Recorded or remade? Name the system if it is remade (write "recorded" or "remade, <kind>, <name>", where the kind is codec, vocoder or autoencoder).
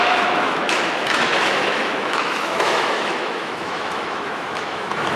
remade, autoencoder, DAC-VAE